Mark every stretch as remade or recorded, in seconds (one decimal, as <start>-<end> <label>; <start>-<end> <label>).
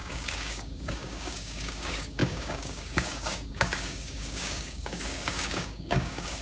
0.0-6.4 remade